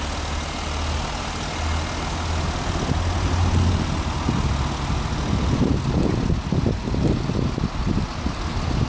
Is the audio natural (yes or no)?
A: yes